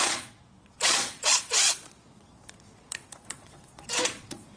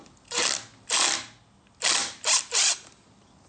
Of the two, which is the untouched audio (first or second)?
second